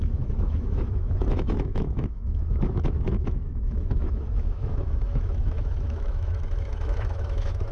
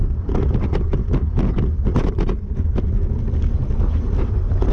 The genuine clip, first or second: second